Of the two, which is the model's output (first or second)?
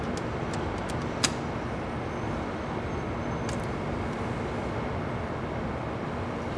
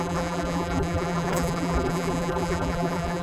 second